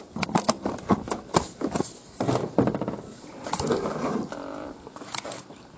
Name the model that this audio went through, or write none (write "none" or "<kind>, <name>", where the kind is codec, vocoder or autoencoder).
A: none